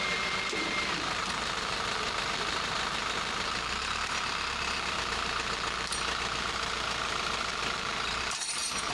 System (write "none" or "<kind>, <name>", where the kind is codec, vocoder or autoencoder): vocoder, BigVGAN v2